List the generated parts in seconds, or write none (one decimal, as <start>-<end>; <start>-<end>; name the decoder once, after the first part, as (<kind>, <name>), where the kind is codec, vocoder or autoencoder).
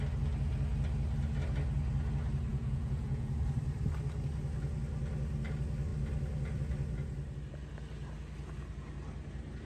2.5-3.3 (vocoder, Vocos)